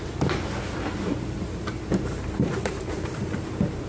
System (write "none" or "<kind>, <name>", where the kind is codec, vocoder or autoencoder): none